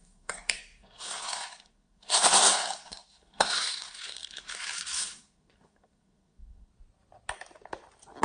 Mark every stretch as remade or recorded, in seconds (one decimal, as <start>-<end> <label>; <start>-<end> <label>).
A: 0.0-6.7 remade; 6.7-8.2 recorded